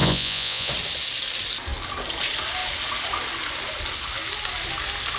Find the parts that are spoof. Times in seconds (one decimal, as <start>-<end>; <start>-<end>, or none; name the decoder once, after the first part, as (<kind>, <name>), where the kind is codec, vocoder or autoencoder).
0.0-0.7 (vocoder, Vocos)